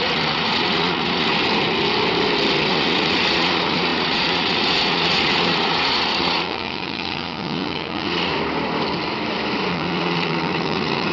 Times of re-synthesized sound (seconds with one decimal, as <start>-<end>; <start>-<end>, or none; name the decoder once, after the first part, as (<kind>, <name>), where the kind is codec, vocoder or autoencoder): 0.0-1.3 (vocoder, Vocos); 2.7-8.3; 9.7-11.1